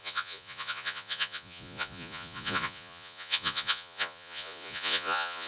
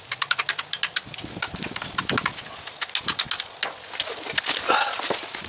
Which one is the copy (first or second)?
first